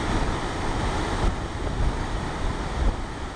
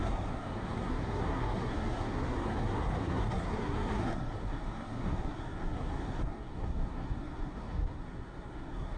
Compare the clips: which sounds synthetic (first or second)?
second